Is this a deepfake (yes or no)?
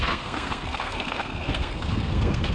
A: yes